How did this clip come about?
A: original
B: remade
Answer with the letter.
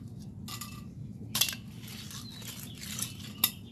A